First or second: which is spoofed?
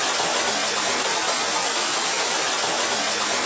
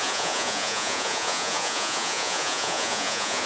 second